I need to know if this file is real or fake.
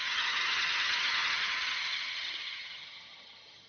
fake